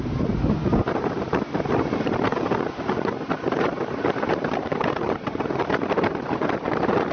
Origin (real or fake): fake